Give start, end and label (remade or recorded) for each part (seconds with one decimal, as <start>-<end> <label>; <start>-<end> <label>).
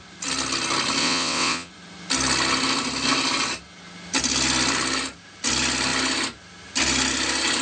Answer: 0.0-1.0 recorded; 1.0-1.7 remade; 1.7-7.6 recorded